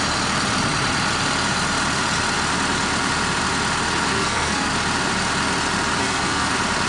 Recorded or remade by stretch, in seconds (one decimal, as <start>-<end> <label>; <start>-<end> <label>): 0.0-4.1 recorded; 4.1-4.7 remade; 4.7-6.0 recorded; 6.0-6.5 remade; 6.5-6.9 recorded